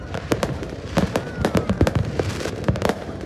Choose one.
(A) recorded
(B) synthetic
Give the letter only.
B